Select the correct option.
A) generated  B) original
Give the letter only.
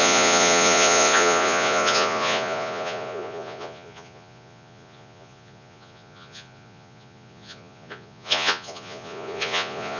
A